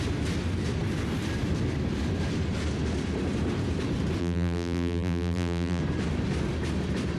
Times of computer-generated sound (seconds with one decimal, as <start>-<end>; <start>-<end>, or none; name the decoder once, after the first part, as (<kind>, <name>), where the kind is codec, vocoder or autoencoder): 4.2-5.8 (vocoder, BigVGAN v2)